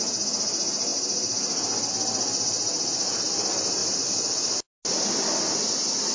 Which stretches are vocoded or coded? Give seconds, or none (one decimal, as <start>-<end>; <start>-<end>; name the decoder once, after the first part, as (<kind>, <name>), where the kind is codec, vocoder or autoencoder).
none